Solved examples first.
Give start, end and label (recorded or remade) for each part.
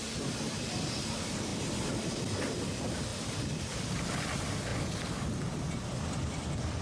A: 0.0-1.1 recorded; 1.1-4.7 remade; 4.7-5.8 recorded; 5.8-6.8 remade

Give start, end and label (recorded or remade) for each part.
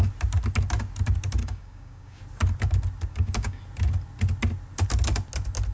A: 0.0-1.4 recorded; 1.4-2.2 remade; 2.2-3.1 recorded; 3.1-3.6 remade; 3.6-5.7 recorded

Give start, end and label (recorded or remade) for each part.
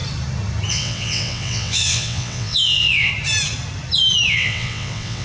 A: 0.0-0.7 recorded; 0.7-3.1 remade; 3.1-4.3 recorded; 4.3-5.2 remade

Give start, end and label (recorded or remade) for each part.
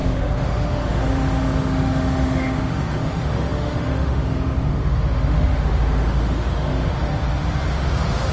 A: 0.0-7.1 remade; 7.1-7.7 recorded; 7.7-8.3 remade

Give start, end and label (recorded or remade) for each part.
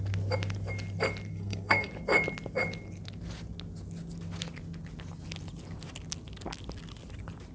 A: 0.0-1.3 recorded; 1.3-1.9 remade; 1.9-7.5 recorded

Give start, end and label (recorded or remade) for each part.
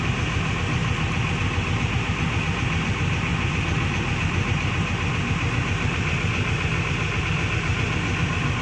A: 0.0-8.6 recorded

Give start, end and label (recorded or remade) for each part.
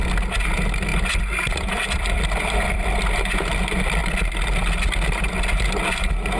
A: 0.0-0.9 recorded; 0.9-3.4 remade; 3.4-6.4 recorded